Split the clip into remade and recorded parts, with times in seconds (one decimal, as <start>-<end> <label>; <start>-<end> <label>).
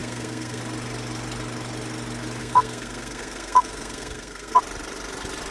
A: 0.0-0.6 remade; 0.6-2.4 recorded; 2.4-4.6 remade; 4.6-5.5 recorded